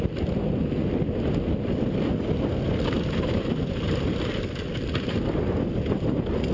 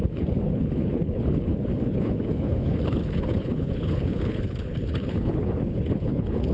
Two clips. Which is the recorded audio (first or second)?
first